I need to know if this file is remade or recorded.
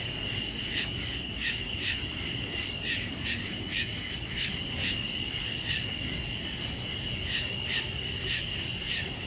remade